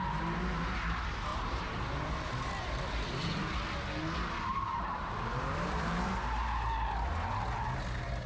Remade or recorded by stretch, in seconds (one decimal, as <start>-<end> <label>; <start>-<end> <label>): 0.0-1.3 recorded; 1.3-1.8 remade; 1.8-4.5 recorded; 4.5-6.1 remade; 6.1-8.3 recorded